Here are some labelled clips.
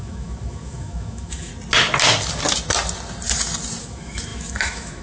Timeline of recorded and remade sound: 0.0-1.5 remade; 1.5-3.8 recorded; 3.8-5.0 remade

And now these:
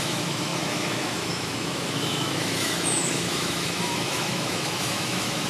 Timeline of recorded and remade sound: 0.0-5.5 remade

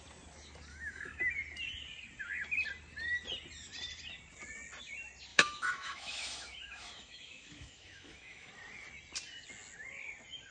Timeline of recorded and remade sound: 0.0-0.7 recorded; 0.7-1.3 remade; 1.3-5.3 recorded; 5.3-8.5 remade; 8.5-10.5 recorded

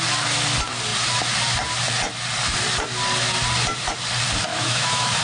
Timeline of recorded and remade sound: 0.0-4.5 recorded; 4.5-5.2 remade